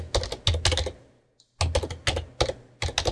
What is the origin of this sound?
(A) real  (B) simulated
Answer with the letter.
A